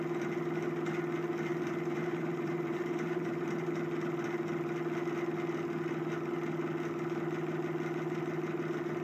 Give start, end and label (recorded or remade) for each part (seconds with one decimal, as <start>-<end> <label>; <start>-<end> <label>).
0.0-1.5 recorded; 1.5-3.7 remade; 3.7-9.0 recorded